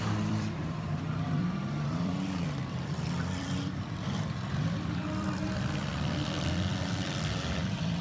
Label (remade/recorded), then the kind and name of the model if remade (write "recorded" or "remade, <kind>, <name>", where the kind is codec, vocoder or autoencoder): remade, vocoder, BigVGAN v2